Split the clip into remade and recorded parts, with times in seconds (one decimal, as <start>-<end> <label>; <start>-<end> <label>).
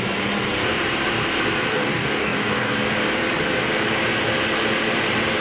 0.0-1.7 recorded; 1.7-2.7 remade; 2.7-5.4 recorded